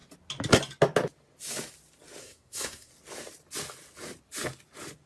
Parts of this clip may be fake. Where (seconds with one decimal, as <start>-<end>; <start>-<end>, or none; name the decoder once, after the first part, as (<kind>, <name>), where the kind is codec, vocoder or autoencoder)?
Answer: 2.2-2.9 (codec, SNAC)